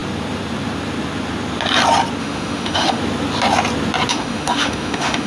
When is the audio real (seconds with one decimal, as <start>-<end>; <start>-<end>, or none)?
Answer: 0.0-2.2; 3.0-4.1